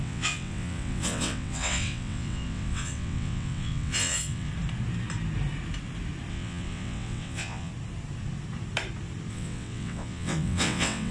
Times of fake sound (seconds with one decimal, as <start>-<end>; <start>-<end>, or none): 0.0-4.5; 6.3-7.7; 9.3-11.1